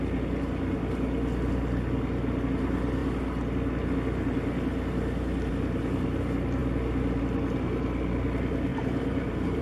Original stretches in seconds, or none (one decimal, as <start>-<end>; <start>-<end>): 0.0-8.7